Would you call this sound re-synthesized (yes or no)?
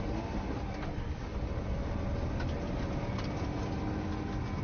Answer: no